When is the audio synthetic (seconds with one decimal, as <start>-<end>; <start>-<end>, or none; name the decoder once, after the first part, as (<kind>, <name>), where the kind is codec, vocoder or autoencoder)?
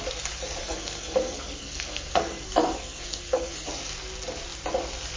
0.6-3.7 (codec, SNAC)